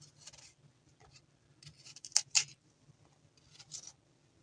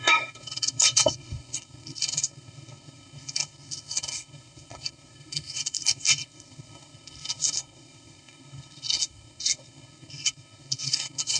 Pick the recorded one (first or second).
first